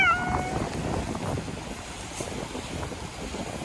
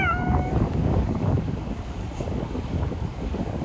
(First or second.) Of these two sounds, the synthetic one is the second